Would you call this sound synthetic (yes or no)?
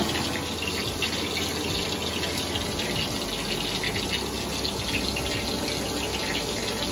no